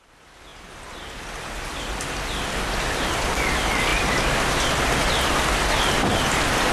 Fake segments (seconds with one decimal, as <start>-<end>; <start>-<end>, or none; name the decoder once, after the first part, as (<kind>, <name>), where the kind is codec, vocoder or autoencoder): none